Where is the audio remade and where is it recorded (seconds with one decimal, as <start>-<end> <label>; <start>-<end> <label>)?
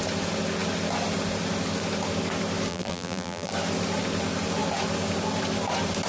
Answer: 0.0-2.7 recorded; 2.7-3.5 remade; 3.5-6.1 recorded